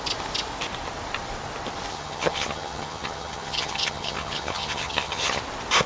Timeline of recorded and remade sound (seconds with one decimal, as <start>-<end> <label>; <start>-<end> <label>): 0.0-1.9 recorded; 1.9-5.4 remade; 5.4-5.9 recorded